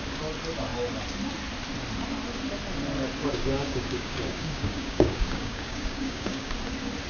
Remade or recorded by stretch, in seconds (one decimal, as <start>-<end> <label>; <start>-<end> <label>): 0.0-3.2 recorded; 3.2-6.5 remade; 6.5-7.1 recorded